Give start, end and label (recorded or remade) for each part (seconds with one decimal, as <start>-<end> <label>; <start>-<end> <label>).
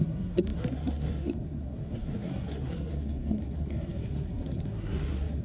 0.0-5.4 remade